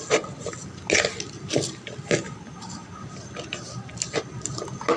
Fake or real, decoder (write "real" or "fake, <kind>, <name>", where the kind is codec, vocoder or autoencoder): real